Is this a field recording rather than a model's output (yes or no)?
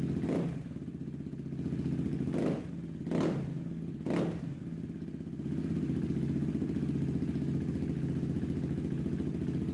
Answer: yes